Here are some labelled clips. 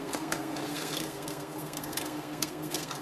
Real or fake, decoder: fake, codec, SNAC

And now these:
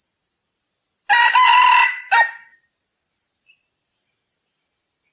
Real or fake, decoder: real